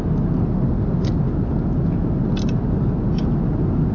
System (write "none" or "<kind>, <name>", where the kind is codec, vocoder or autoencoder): none